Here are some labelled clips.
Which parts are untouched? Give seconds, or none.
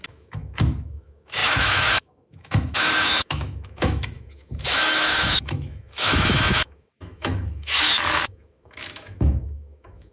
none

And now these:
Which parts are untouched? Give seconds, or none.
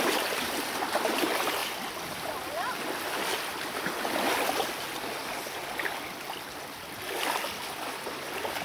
1.6-6.8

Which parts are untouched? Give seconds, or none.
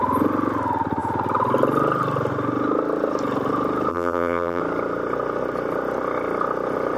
0.0-3.9; 4.6-7.0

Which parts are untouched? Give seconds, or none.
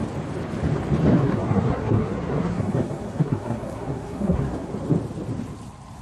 0.0-1.1; 4.7-6.0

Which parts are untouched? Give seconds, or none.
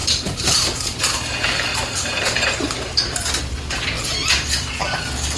1.0-1.7; 3.8-4.2; 4.8-5.4